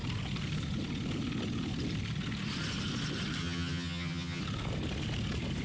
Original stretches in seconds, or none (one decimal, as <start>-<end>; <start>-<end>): 0.0-3.4; 4.4-5.6